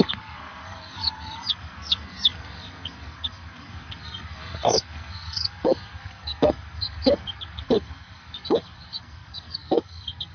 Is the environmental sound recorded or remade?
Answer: remade